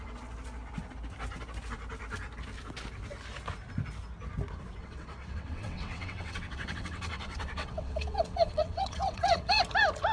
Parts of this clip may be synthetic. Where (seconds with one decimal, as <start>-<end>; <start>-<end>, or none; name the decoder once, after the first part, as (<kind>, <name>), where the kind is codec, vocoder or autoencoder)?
4.8-9.6 (vocoder, WaveNeXt)